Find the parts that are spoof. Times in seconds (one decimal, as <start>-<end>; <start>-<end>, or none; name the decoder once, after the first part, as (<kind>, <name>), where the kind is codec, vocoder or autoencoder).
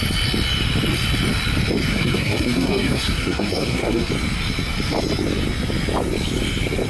1.9-4.1 (codec, SNAC)